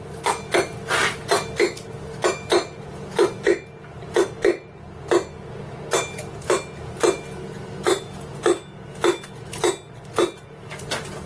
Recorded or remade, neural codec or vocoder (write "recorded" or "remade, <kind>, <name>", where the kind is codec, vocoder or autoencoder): recorded